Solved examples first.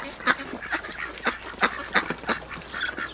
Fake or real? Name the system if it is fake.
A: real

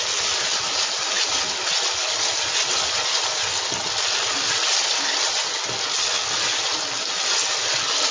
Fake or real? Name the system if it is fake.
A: real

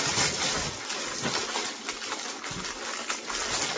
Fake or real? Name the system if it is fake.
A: real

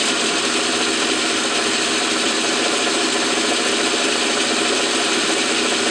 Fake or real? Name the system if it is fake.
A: real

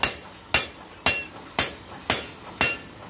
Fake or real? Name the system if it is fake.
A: real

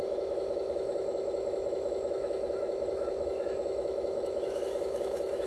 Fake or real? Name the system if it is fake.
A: fake, autoencoder, DAC-VAE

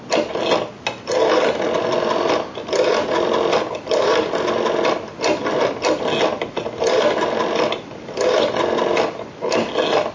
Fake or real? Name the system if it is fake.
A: real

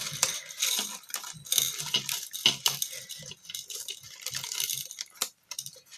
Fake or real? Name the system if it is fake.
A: real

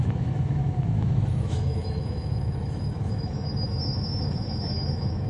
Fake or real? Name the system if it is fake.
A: fake, autoencoder, DAC-VAE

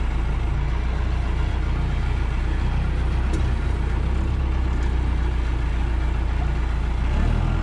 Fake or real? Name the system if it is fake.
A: real